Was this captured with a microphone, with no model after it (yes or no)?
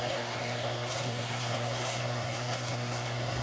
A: no